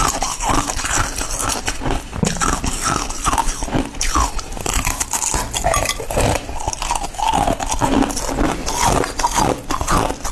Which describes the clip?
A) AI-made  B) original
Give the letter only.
B